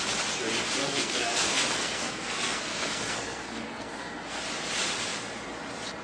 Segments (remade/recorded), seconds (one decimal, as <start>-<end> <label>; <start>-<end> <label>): 0.0-0.8 recorded; 0.8-4.4 remade; 4.4-6.0 recorded